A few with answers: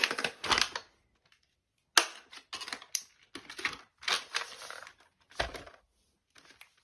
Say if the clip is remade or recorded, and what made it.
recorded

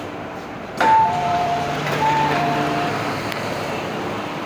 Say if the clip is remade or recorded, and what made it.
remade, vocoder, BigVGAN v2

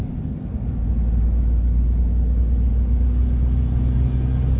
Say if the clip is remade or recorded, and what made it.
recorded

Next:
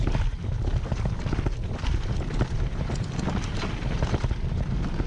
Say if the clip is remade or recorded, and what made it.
recorded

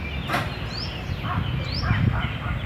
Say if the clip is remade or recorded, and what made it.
recorded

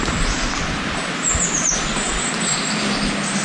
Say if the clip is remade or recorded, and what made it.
recorded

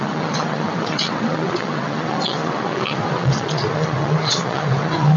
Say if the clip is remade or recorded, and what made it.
remade, vocoder, WaveNeXt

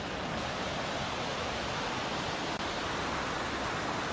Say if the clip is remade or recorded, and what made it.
recorded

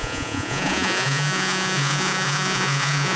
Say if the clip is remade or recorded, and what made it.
remade, vocoder, Vocos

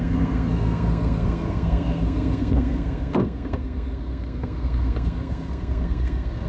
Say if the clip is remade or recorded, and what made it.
remade, codec, SNAC